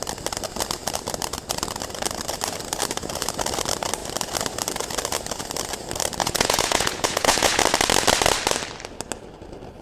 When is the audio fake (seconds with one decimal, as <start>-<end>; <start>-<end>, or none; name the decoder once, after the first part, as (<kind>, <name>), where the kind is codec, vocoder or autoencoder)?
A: 6.2-7.6 (vocoder, Vocos)